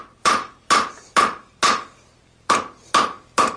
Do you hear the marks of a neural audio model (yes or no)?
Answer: yes